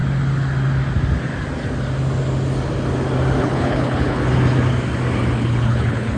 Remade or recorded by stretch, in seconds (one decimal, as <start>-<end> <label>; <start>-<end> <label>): 0.0-3.4 recorded; 3.4-4.2 remade; 4.2-5.4 recorded; 5.4-6.2 remade